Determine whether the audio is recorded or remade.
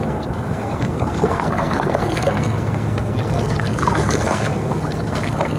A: remade